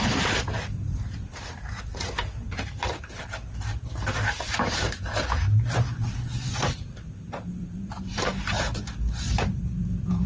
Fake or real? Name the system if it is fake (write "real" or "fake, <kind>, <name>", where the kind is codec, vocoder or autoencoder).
fake, vocoder, BigVGAN v2